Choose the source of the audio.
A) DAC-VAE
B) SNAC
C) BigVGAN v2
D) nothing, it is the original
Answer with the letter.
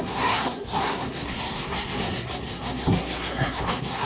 B